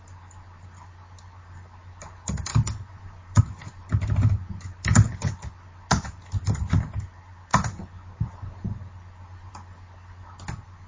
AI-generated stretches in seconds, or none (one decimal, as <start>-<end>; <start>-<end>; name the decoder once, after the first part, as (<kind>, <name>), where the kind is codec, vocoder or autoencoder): 2.5-3.4 (vocoder, BigVGAN v2)

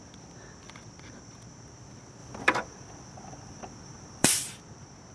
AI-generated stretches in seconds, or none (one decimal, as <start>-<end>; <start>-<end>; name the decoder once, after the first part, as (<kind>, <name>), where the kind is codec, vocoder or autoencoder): 2.2-4.3 (vocoder, BigVGAN v2)